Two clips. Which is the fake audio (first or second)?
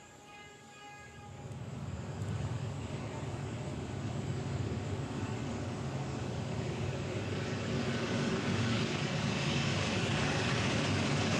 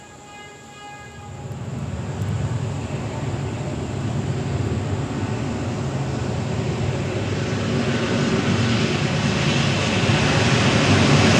first